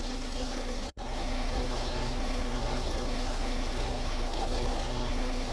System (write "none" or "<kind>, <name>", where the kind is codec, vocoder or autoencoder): codec, SNAC